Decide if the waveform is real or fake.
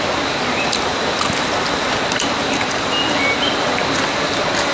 real